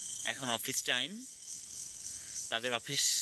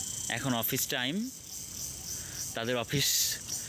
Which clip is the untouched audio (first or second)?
second